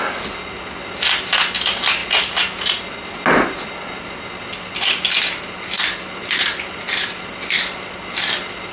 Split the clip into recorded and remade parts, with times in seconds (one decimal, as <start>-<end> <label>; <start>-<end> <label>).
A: 0.0-8.7 recorded